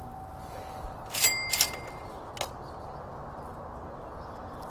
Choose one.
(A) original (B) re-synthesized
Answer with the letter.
A